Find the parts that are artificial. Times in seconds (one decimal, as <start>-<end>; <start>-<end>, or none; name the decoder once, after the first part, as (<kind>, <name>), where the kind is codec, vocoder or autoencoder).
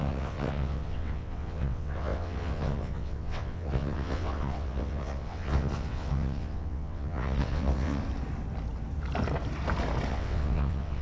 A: 0.0-8.0 (vocoder, WaveNeXt); 10.1-11.0